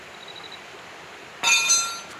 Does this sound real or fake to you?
real